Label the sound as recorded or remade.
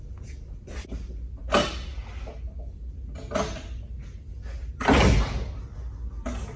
recorded